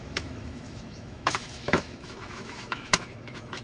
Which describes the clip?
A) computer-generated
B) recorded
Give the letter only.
A